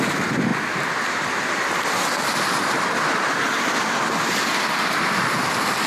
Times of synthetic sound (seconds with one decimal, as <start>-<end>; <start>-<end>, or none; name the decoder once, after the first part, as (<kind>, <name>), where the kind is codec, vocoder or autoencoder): none